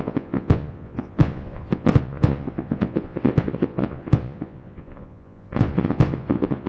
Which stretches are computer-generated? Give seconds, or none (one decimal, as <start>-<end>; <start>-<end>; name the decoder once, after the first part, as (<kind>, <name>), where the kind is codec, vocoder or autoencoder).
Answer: 0.0-6.7 (vocoder, Vocos)